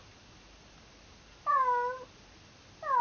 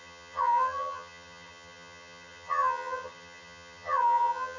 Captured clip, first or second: first